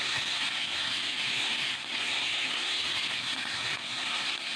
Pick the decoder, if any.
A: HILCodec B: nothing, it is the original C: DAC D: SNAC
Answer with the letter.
D